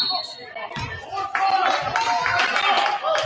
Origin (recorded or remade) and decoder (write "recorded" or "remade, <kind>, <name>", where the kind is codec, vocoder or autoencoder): recorded